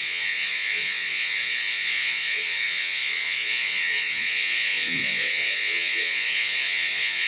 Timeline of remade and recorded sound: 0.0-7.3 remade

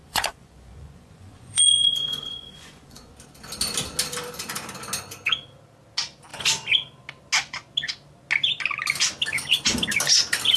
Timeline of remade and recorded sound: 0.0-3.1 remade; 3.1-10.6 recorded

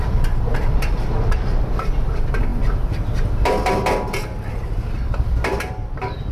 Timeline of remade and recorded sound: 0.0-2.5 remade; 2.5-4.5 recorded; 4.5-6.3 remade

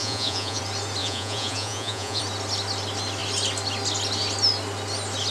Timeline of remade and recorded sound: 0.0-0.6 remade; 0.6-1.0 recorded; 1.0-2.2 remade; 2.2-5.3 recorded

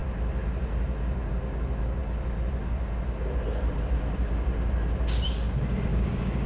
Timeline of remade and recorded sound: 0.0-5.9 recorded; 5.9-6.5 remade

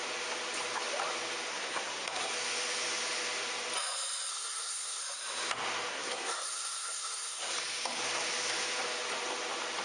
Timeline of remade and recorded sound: 0.0-1.5 recorded; 1.5-2.3 remade; 2.3-4.3 recorded; 4.3-5.0 remade; 5.0-5.9 recorded; 5.9-7.4 remade; 7.4-9.8 recorded

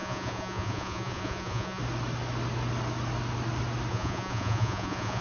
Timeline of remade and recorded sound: 0.0-1.8 remade; 1.8-3.9 recorded; 3.9-5.2 remade